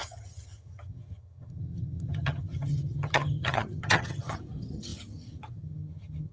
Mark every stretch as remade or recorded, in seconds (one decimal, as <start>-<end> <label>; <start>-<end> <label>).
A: 0.0-6.3 remade